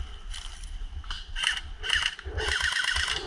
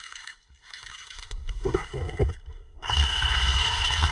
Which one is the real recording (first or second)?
first